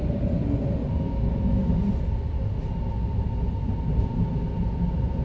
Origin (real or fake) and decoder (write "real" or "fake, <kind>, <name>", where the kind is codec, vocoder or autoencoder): real